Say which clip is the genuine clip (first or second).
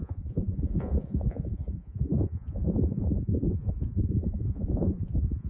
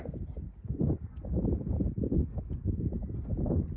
second